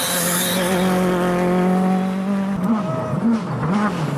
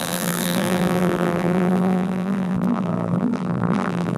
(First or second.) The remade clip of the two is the second